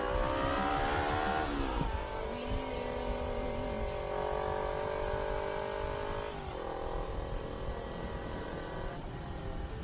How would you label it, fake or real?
real